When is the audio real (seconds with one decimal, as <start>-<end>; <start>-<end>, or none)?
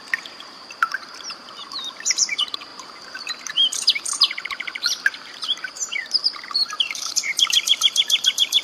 none